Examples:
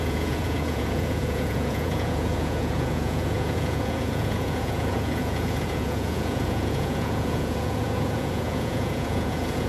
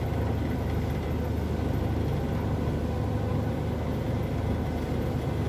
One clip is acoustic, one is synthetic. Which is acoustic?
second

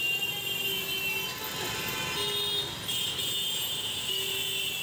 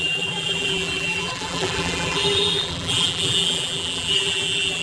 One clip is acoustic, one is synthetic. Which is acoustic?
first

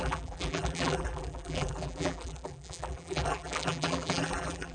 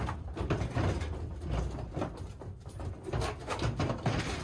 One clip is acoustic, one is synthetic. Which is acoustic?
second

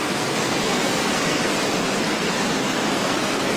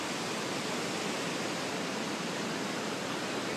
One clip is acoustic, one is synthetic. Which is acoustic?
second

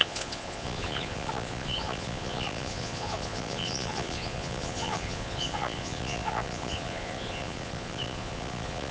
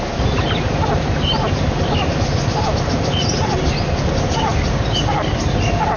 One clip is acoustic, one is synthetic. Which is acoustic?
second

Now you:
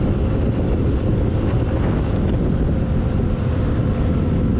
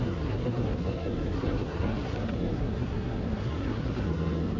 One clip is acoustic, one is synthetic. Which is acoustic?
first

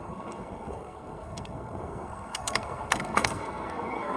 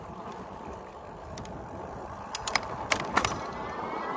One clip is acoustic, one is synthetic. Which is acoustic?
second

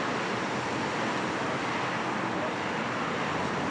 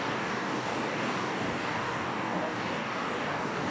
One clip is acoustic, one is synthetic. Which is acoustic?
first